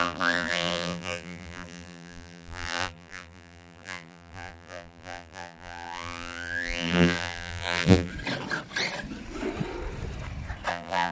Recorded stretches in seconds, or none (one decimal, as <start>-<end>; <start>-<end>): 8.1-10.7